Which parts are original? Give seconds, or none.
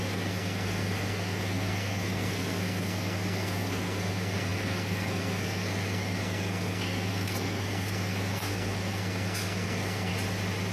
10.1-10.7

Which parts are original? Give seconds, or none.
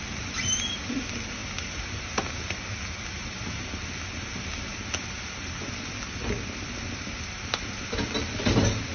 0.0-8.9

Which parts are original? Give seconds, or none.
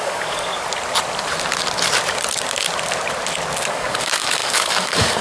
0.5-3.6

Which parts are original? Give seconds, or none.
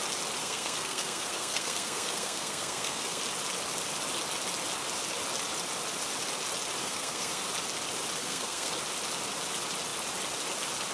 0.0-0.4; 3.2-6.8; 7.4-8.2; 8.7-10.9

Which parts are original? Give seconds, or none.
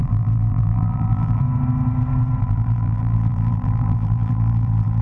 1.4-2.4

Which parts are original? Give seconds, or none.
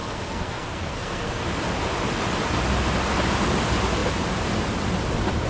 1.4-5.5